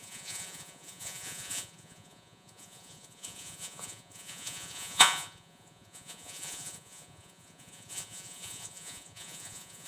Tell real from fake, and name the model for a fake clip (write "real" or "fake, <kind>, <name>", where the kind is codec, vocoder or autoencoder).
fake, vocoder, Vocos